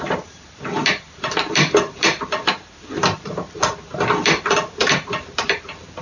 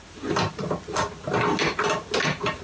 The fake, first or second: first